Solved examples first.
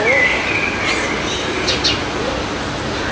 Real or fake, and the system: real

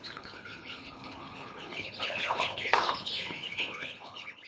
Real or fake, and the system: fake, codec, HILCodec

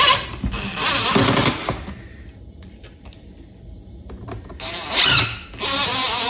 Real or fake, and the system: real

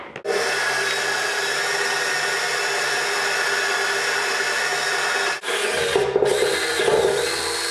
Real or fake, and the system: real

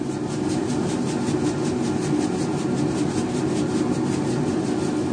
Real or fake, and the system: real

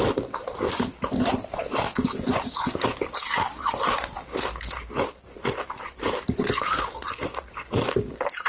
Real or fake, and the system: real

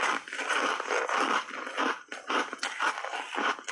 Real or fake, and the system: real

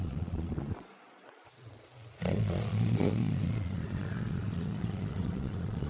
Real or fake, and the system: fake, vocoder, Vocos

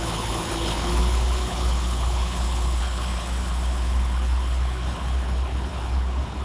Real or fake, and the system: fake, codec, HILCodec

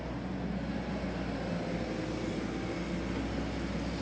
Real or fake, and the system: real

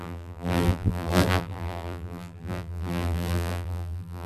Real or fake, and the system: fake, vocoder, BigVGAN v2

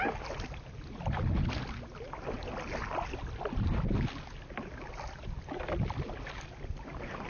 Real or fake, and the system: real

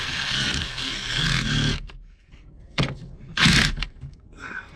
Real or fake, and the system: fake, codec, SNAC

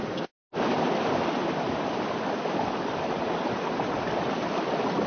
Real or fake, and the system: real